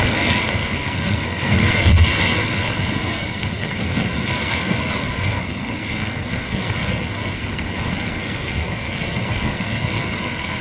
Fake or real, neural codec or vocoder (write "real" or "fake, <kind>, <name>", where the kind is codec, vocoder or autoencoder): fake, codec, SNAC